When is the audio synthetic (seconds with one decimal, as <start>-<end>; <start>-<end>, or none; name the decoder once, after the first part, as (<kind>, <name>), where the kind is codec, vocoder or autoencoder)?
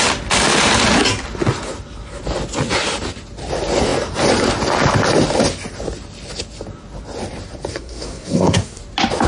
7.7-8.8 (codec, SNAC)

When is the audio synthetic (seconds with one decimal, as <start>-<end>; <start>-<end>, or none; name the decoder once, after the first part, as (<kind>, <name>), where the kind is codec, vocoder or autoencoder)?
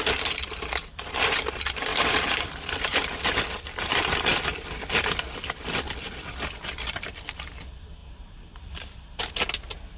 1.9-3.2 (vocoder, BigVGAN v2); 8.0-9.3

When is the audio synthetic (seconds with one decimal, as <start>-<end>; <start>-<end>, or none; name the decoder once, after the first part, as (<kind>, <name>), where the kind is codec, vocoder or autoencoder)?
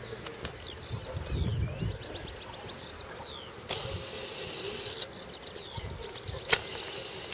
none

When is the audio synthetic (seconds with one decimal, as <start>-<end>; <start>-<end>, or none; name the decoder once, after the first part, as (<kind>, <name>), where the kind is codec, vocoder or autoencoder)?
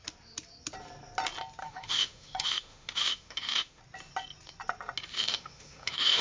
1.6-3.8 (autoencoder, DAC-VAE); 5.1-6.2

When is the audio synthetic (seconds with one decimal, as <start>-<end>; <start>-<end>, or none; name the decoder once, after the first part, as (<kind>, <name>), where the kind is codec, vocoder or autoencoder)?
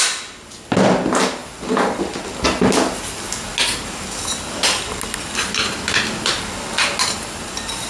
none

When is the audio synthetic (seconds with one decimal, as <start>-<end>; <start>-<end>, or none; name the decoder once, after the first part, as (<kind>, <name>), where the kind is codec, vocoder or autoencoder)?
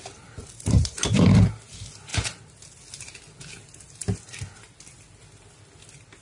0.4-1.1 (vocoder, BigVGAN v2); 2.1-2.8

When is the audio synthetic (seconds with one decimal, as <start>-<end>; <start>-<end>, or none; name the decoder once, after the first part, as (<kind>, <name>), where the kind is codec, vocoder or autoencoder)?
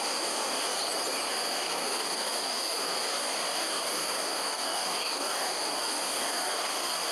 0.0-0.8 (codec, DAC); 1.3-7.1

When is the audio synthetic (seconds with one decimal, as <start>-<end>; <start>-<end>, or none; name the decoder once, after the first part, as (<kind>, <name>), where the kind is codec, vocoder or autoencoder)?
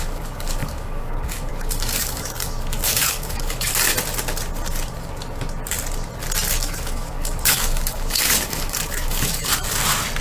0.0-3.7 (codec, DAC); 6.5-9.5